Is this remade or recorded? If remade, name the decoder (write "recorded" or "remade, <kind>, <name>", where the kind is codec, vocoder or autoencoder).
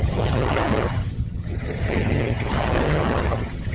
remade, vocoder, HiFi-GAN